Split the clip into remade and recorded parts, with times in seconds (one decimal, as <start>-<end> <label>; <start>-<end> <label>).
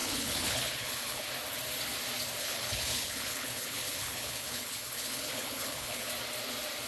0.0-1.3 remade; 1.3-2.4 recorded; 2.4-6.1 remade; 6.1-6.9 recorded